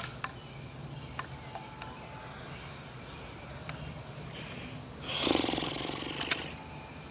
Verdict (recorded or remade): recorded